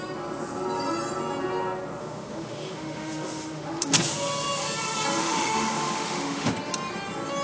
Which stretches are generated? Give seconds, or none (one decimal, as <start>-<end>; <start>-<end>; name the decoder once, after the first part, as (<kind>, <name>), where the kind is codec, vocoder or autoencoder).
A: 2.0-4.0 (autoencoder, DAC-VAE); 5.2-6.5